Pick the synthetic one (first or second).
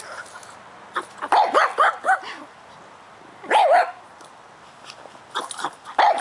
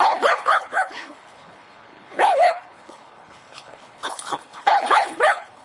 second